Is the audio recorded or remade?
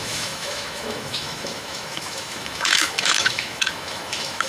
remade